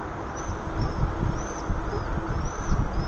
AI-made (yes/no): no